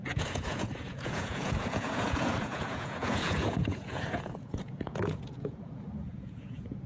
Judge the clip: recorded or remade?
remade